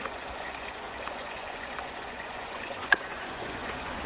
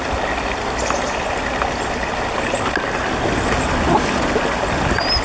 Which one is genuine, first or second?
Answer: second